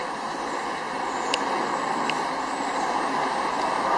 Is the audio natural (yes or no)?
yes